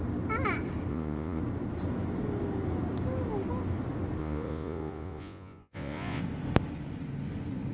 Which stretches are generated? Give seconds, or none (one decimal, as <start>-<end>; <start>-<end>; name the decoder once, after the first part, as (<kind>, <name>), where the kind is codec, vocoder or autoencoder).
0.9-1.4 (vocoder, Vocos); 4.2-6.2